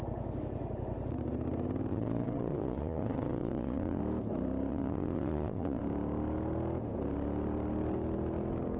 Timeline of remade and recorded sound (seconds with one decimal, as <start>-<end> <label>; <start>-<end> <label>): 0.0-1.9 recorded; 1.9-4.0 remade; 4.0-4.7 recorded; 4.7-5.8 remade; 5.8-8.8 recorded